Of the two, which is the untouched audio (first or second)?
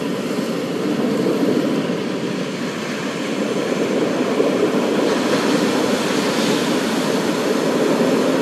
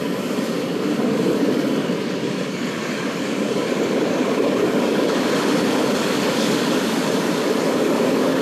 first